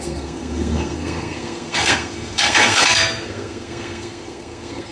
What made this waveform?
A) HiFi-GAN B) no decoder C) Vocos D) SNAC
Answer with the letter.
D